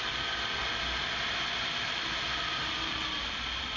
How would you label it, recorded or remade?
recorded